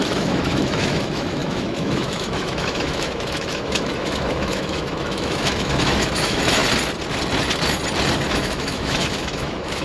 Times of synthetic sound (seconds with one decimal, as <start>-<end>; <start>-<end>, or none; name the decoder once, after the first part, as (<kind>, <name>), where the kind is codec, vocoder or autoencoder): 0.0-6.6 (autoencoder, DAC-VAE); 8.3-9.8